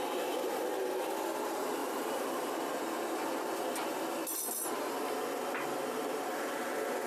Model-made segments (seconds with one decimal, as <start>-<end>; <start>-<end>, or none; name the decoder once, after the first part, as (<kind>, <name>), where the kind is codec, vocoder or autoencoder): 1.8-2.5 (vocoder, BigVGAN v2)